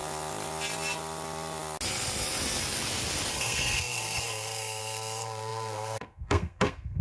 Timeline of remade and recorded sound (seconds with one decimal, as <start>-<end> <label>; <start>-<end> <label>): 0.0-3.3 recorded; 3.3-7.0 remade